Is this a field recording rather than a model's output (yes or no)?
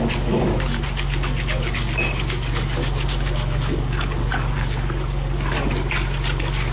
no